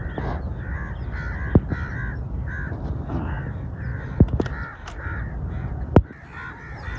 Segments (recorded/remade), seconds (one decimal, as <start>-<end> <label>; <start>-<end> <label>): 0.0-7.0 recorded